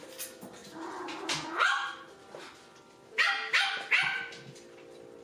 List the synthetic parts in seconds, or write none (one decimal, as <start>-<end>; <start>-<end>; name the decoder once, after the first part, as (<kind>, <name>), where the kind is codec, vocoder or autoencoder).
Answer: none